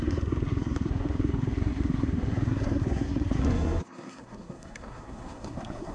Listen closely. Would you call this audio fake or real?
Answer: fake